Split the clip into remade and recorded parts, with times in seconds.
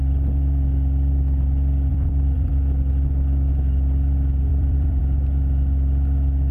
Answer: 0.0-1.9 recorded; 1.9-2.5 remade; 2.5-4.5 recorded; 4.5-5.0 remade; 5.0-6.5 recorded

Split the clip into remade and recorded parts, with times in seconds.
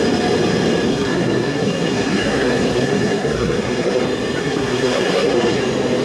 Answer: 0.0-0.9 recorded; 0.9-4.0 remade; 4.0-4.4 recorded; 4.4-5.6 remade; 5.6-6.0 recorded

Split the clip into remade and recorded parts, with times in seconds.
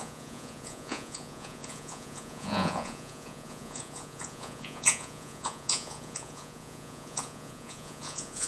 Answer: 0.0-8.5 remade